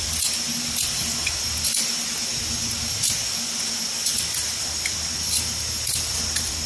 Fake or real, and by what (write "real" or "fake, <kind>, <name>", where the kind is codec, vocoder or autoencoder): real